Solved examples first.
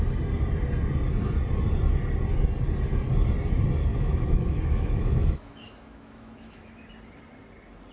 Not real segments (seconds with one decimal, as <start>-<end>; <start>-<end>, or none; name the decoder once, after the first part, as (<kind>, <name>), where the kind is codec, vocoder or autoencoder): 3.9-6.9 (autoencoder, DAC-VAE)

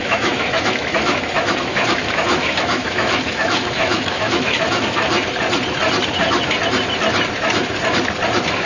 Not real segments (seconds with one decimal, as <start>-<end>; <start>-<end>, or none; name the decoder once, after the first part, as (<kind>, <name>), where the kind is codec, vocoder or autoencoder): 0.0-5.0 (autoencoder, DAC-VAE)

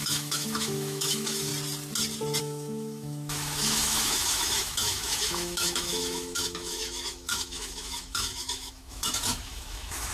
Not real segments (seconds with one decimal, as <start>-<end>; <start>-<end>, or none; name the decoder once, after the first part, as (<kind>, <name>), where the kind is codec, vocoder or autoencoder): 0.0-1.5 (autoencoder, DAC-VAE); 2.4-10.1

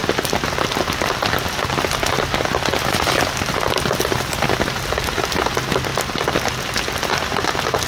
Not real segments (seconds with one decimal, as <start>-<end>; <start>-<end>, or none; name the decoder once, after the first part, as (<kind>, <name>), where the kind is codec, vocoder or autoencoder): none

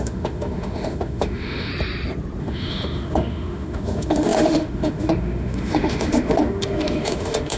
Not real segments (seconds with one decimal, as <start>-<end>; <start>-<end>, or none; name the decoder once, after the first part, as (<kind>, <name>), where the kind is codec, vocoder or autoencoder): 0.0-1.7 (autoencoder, DAC-VAE); 2.4-7.6

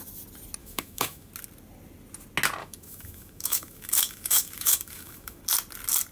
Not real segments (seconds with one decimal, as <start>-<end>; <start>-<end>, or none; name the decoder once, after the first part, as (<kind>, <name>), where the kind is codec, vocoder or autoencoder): 0.6-1.3 (autoencoder, DAC-VAE); 2.6-5.4